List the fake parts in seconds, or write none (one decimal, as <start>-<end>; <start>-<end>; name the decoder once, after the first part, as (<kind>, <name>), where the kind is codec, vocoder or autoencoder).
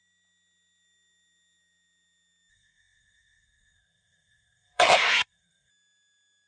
2.5-5.7 (codec, SNAC)